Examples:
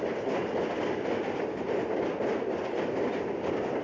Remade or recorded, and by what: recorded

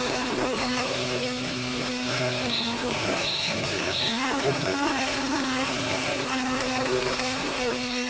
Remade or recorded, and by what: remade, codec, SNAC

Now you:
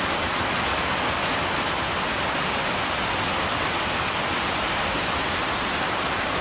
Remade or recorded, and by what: recorded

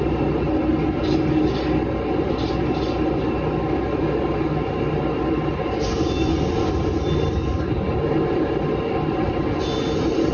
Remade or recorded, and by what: recorded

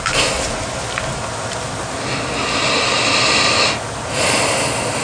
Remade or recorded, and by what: recorded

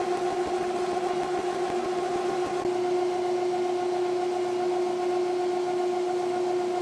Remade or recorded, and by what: recorded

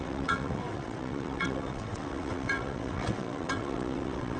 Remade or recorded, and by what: remade, vocoder, WaveNeXt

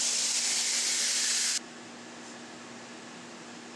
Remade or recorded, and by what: recorded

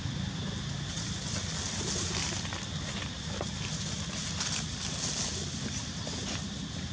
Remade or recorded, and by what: recorded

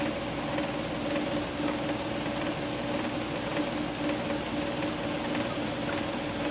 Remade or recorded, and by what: recorded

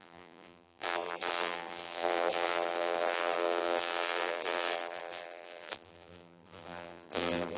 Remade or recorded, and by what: remade, vocoder, BigVGAN v2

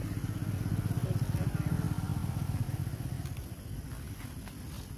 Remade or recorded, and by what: recorded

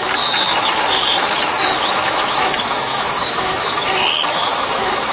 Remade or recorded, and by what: remade, autoencoder, DAC-VAE